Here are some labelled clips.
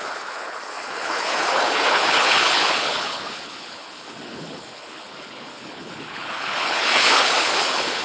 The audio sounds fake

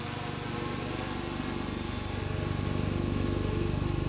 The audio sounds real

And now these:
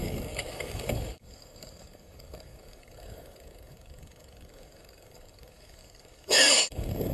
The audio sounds fake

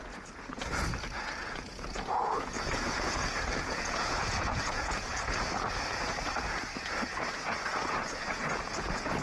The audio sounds fake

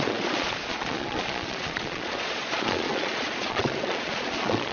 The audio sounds fake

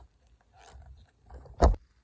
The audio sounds fake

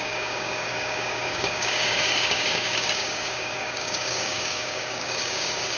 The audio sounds fake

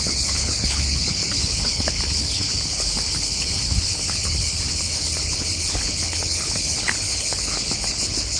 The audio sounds fake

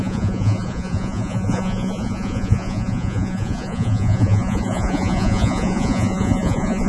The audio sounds fake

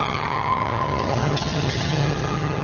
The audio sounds fake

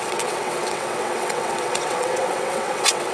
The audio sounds fake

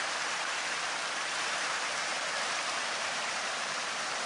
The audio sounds fake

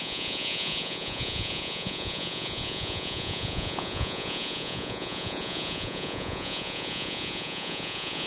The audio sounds fake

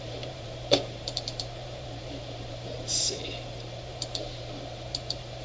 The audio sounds fake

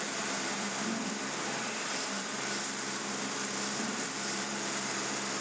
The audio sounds fake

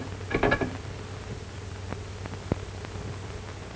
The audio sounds real